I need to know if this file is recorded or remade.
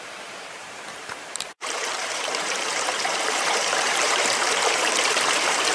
remade